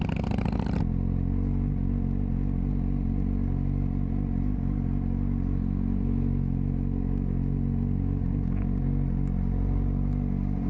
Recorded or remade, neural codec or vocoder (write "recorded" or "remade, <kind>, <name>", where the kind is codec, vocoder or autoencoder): recorded